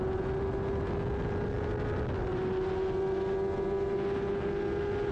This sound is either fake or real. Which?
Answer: real